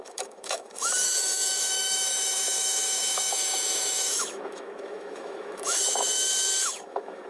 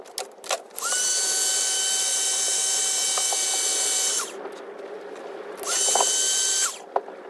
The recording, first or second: second